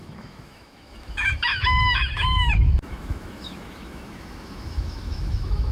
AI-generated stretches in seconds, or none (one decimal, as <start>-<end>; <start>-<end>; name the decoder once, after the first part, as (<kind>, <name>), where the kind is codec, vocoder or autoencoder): 0.0-5.7 (autoencoder, DAC-VAE)